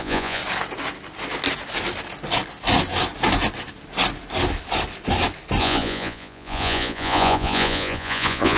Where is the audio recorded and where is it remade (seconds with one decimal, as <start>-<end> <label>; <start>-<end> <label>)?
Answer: 0.0-0.4 remade; 0.4-5.6 recorded; 5.6-8.6 remade